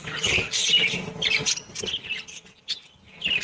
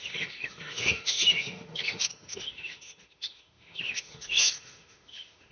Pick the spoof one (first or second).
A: second